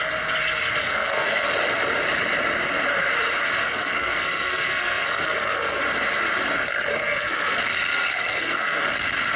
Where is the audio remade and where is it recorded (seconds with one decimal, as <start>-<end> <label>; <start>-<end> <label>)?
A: 0.0-0.8 recorded; 0.8-1.5 remade; 1.5-3.6 recorded; 3.6-5.8 remade; 5.8-6.9 recorded; 6.9-7.6 remade; 7.6-8.1 recorded; 8.1-8.8 remade; 8.8-9.4 recorded